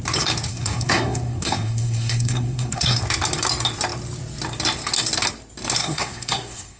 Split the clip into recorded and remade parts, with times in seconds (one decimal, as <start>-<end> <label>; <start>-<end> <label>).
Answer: 0.0-0.5 recorded; 0.5-3.0 remade; 3.0-5.8 recorded; 5.8-6.8 remade